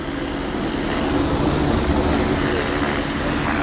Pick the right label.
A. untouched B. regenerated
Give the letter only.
A